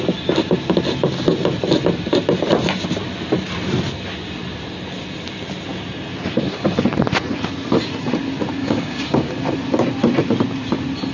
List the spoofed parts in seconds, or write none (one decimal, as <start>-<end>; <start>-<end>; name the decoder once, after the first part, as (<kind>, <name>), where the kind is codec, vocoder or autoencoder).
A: 8.6-9.3 (codec, DAC)